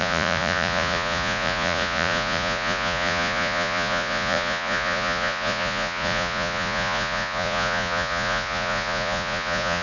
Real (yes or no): no